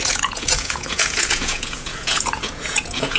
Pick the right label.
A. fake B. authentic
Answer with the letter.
A